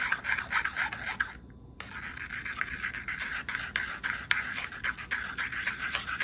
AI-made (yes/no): no